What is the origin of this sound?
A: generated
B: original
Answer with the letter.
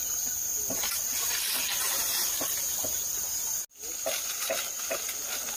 B